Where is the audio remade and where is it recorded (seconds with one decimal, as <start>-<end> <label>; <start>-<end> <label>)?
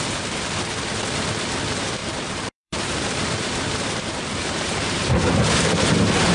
0.0-2.0 recorded; 2.0-5.8 remade; 5.8-6.3 recorded